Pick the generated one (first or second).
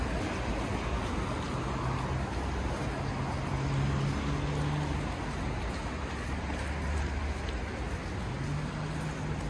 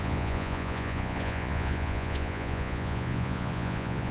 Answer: second